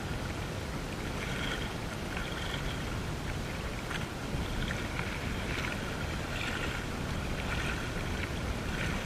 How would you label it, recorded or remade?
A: recorded